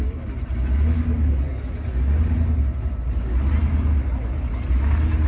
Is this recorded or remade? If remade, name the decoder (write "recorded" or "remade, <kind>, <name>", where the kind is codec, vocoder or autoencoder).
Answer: recorded